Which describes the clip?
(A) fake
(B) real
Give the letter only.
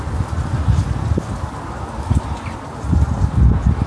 B